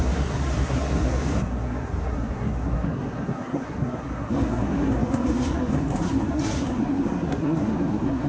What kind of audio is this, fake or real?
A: fake